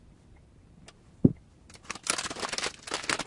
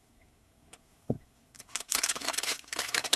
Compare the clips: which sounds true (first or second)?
first